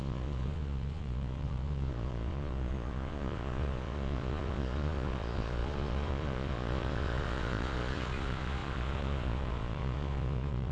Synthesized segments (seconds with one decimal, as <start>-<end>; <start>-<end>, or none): 0.0-10.7